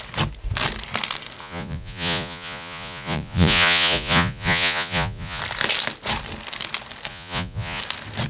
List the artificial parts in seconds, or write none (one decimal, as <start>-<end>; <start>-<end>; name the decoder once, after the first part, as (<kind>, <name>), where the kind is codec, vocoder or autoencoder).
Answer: 1.4-5.4 (vocoder, Vocos); 7.1-7.8